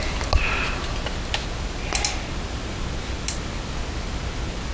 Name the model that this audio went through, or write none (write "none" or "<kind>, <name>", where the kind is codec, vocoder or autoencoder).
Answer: none